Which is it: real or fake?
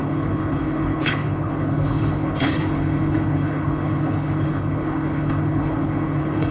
fake